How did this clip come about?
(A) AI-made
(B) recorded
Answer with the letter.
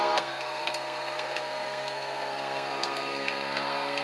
A